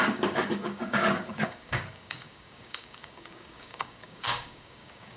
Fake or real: fake